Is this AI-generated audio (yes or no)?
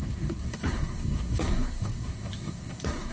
yes